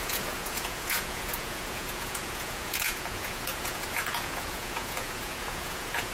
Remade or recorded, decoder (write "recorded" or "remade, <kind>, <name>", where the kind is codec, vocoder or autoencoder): remade, vocoder, Vocos